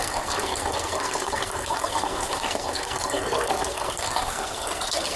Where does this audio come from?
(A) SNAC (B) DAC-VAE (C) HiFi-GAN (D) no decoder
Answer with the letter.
A